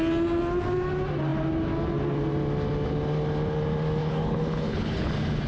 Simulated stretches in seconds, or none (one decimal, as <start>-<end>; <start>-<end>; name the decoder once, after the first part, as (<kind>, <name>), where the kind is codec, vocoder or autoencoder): 4.0-5.1 (codec, HILCodec)